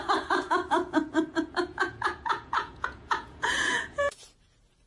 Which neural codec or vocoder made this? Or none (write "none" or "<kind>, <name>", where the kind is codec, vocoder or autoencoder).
vocoder, Vocos